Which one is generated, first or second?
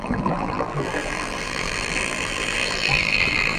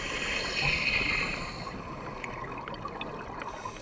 first